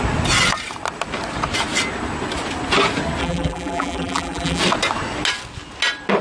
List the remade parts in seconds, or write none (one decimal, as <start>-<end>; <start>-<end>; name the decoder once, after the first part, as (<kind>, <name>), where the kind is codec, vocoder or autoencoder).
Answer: 3.2-4.6 (vocoder, BigVGAN v2)